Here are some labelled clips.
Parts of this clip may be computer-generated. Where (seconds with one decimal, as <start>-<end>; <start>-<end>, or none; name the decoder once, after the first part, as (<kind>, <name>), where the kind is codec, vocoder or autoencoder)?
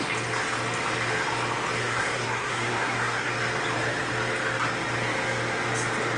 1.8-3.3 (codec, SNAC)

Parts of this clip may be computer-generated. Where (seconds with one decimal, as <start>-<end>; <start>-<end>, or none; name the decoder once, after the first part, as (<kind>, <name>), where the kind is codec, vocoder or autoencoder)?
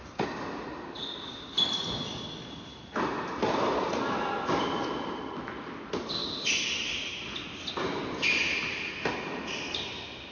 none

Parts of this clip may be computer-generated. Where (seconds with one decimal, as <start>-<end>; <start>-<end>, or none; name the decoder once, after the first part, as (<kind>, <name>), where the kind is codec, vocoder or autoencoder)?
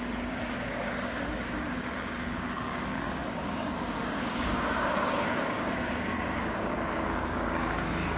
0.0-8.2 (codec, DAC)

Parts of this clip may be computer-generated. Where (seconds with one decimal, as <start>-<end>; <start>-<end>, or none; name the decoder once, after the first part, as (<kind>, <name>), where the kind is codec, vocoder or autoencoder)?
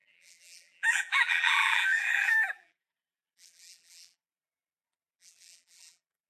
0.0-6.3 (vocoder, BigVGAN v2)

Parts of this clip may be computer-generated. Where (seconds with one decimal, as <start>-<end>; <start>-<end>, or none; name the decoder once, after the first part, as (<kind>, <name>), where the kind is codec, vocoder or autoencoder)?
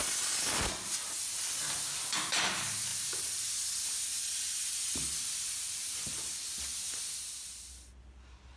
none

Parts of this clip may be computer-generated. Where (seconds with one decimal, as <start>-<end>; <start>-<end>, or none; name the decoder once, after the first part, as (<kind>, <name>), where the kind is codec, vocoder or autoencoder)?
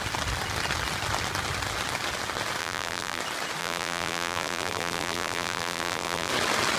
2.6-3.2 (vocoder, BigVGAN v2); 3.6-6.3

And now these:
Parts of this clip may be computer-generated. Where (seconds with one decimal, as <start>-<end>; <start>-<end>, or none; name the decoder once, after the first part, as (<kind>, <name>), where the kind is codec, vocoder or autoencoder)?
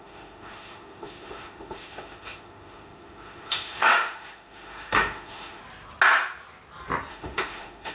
0.0-5.6 (autoencoder, DAC-VAE); 7.1-7.9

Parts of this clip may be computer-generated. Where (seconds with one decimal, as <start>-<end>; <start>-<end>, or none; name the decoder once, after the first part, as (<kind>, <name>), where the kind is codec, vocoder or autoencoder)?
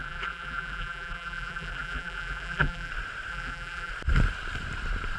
0.0-2.9 (vocoder, BigVGAN v2); 3.3-3.9